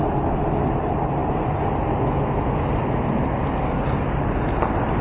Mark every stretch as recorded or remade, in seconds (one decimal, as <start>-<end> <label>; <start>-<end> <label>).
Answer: 0.0-5.0 recorded